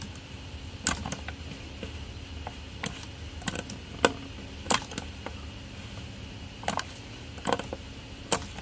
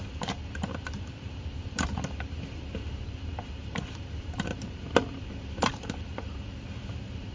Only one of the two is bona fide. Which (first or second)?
first